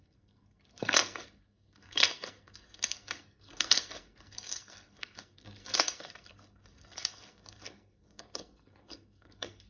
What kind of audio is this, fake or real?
fake